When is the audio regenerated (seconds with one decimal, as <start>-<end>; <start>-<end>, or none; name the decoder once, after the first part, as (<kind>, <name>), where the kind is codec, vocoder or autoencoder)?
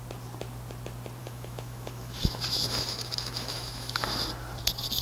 1.2-4.2 (autoencoder, DAC-VAE)